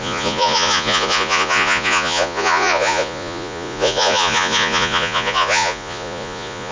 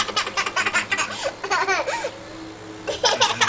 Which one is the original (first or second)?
second